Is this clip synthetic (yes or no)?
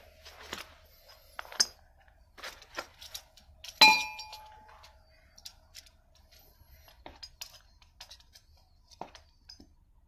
no